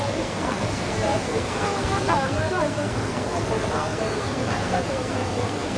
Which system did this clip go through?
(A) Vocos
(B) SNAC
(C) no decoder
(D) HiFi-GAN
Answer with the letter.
B